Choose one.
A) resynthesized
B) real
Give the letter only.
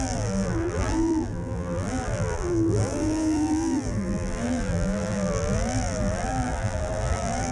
A